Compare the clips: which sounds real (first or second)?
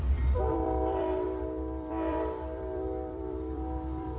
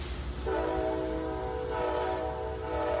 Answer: second